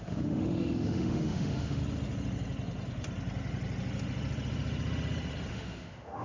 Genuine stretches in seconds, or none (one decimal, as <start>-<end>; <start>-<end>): 1.8-5.5